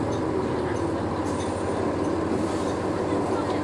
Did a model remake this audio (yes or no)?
no